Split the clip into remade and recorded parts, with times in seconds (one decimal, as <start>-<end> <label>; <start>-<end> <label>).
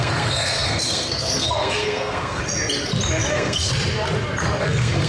0.0-2.4 remade; 2.4-3.3 recorded; 3.3-3.7 remade; 3.7-4.6 recorded; 4.6-5.1 remade